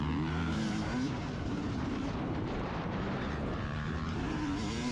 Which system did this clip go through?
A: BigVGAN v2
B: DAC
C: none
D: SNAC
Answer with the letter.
A